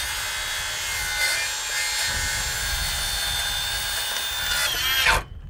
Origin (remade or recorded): recorded